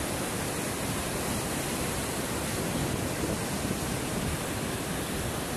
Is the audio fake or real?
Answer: real